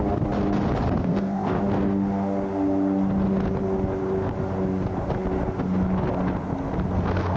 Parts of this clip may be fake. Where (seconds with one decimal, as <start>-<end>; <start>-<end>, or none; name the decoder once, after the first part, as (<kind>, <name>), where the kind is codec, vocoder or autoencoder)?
1.0-1.6 (codec, ZipCodec)